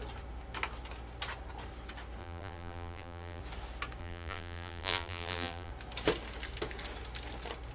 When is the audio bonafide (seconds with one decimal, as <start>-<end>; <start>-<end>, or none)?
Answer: 0.0-2.2; 3.4-4.0; 5.7-7.7